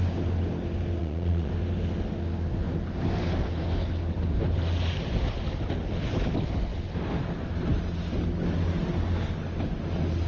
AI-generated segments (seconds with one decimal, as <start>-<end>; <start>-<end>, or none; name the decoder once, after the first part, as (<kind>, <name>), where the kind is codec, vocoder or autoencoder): 1.0-1.5 (vocoder, Vocos)